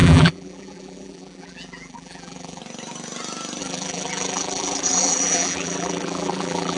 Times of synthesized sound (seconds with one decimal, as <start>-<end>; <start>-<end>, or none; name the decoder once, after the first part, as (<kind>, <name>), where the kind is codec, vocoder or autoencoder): 0.0-2.6 (vocoder, BigVGAN v2); 3.6-6.8